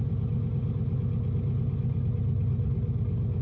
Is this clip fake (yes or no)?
no